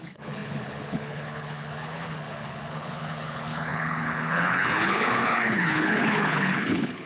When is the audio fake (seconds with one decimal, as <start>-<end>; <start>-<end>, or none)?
0.0-7.1